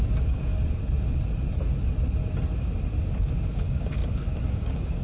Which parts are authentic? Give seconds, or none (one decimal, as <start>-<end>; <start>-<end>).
0.5-3.5; 4.0-4.5